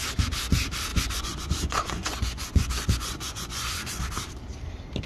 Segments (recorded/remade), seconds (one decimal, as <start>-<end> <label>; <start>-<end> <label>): 0.0-0.9 recorded; 0.9-4.0 remade; 4.0-5.1 recorded